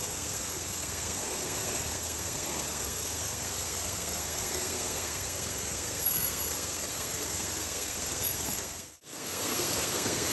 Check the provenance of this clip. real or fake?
fake